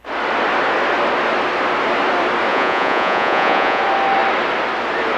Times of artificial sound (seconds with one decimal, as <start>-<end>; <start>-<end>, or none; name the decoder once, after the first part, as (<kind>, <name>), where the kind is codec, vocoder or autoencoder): 2.5-3.8 (vocoder, Vocos)